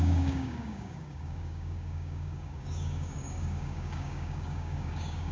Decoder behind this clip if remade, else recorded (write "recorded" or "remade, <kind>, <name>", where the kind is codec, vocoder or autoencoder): remade, codec, DAC